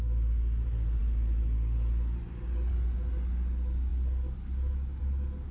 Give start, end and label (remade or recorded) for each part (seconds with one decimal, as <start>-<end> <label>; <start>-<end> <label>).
0.0-5.5 recorded